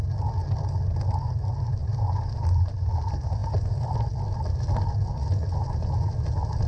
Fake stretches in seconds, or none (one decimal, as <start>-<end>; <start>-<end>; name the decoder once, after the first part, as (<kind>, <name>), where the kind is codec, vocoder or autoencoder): none